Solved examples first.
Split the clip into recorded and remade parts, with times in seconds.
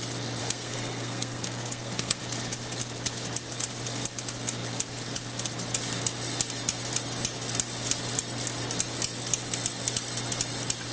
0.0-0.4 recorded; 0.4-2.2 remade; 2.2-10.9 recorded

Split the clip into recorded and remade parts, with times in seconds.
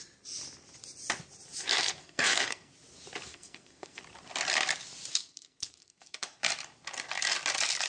0.0-2.0 recorded; 2.0-2.7 remade; 2.7-3.3 recorded; 3.3-4.0 remade; 4.0-5.1 recorded; 5.1-6.4 remade; 6.4-7.9 recorded